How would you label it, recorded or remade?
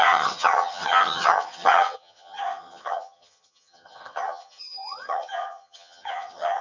remade